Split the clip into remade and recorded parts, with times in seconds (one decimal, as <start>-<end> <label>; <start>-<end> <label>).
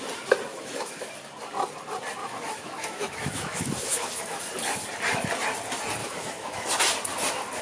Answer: 0.0-0.5 recorded; 0.5-1.1 remade; 1.1-2.2 recorded; 2.2-4.4 remade; 4.4-6.0 recorded; 6.0-6.7 remade; 6.7-7.6 recorded